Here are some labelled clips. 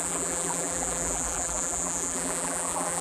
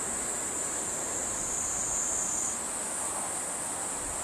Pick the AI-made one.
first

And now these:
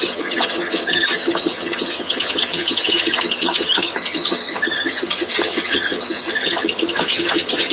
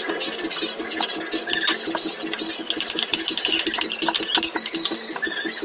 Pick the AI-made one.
first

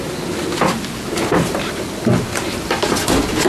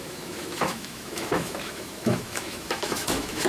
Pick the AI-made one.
second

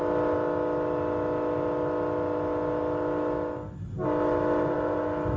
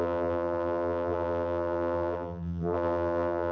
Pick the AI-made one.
second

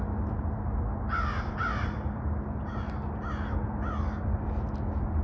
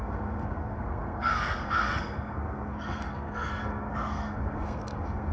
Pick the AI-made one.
second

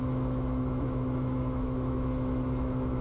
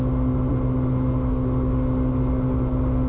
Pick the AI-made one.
first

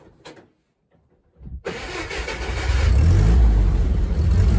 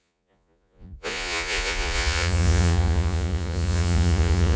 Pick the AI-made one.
second